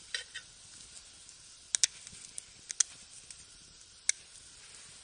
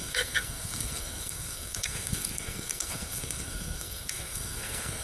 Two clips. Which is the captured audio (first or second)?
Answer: first